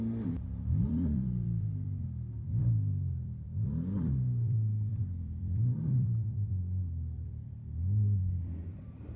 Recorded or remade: remade